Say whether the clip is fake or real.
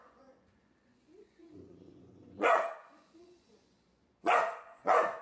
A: fake